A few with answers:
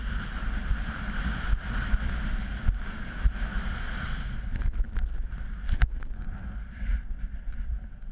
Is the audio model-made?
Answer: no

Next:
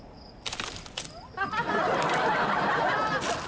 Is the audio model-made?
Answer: no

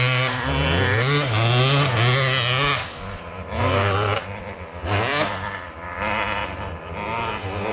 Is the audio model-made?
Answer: no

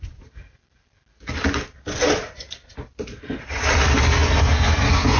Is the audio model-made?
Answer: no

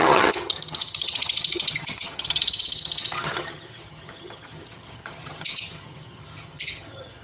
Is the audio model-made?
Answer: yes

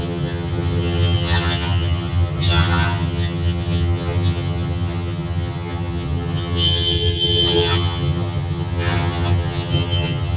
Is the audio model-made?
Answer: yes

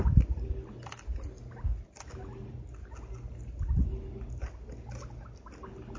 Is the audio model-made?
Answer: no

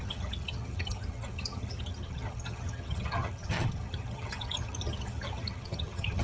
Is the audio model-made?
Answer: yes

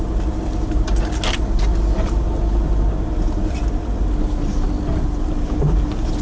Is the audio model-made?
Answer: no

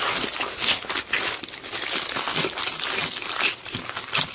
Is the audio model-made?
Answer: no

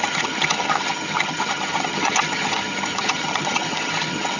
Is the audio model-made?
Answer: yes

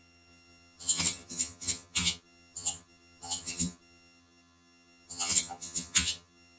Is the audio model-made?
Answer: yes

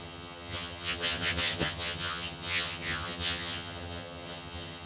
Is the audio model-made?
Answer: yes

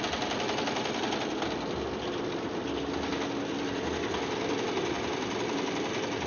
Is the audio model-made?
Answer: no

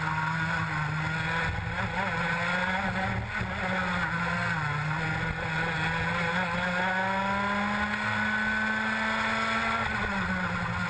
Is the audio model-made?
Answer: no